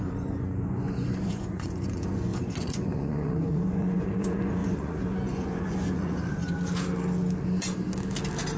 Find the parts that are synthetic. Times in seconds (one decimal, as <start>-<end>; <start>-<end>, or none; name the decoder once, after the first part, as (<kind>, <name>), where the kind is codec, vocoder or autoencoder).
0.0-6.4 (vocoder, Vocos)

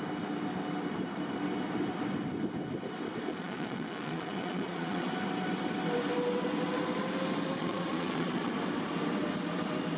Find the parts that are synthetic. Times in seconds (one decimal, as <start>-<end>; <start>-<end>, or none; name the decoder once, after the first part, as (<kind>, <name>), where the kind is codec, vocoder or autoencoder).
3.3-5.1 (vocoder, Vocos); 7.6-8.5

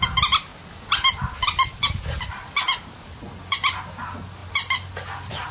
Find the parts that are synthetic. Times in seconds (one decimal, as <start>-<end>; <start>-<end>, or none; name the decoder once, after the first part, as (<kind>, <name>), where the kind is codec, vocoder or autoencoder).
none